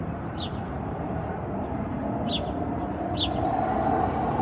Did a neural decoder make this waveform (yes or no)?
no